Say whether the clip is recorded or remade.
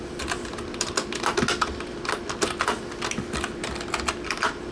recorded